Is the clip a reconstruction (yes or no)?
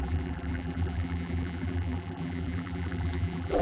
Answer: yes